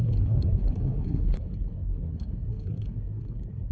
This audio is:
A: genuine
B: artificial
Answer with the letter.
B